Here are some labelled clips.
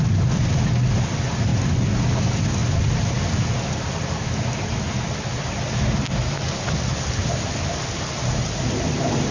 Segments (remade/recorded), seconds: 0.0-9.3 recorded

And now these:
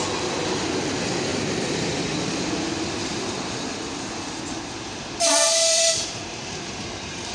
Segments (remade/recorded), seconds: 0.0-3.0 recorded; 3.0-7.3 remade

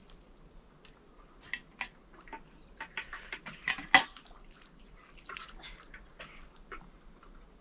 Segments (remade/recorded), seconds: 0.0-7.6 recorded

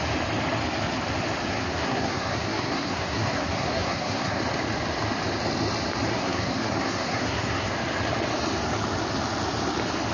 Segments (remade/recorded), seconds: 0.0-1.5 recorded; 1.5-4.4 remade; 4.4-6.1 recorded; 6.1-7.7 remade; 7.7-10.1 recorded

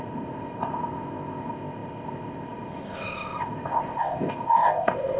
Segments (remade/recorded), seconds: 0.0-5.2 remade

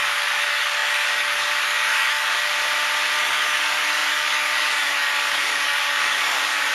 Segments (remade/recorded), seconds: 0.0-2.5 remade; 2.5-3.2 recorded; 3.2-6.7 remade

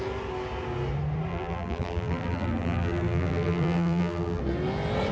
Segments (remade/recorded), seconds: 0.0-1.3 recorded; 1.3-4.4 remade; 4.4-5.1 recorded

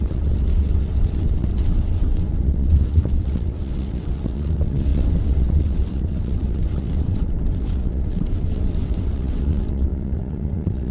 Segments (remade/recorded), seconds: 0.0-10.9 remade